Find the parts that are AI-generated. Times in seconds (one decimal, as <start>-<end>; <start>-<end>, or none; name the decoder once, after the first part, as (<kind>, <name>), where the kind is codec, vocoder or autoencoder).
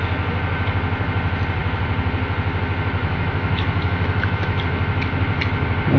3.0-4.6 (autoencoder, DAC-VAE)